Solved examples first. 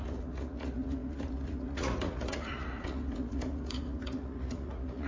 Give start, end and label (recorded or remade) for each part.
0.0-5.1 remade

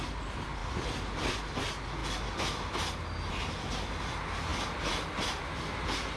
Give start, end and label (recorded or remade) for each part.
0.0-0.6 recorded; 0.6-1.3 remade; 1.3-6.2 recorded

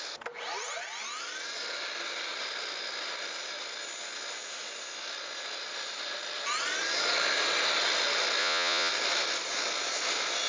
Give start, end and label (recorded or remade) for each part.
0.0-8.4 recorded; 8.4-8.9 remade; 8.9-10.5 recorded

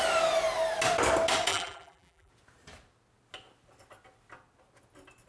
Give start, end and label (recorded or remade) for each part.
0.0-1.5 recorded; 1.5-2.3 remade; 2.3-5.3 recorded